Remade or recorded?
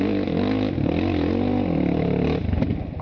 recorded